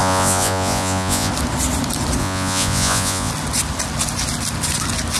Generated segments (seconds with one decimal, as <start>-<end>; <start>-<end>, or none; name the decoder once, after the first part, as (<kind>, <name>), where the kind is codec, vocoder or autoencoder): 0.0-1.3 (vocoder, Vocos); 2.2-3.3